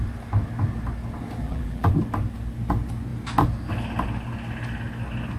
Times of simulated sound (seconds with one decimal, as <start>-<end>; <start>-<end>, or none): 1.4-1.9